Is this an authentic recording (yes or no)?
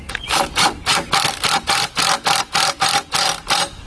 yes